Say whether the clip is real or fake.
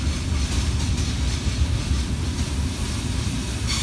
real